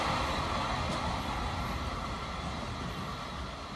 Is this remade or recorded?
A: recorded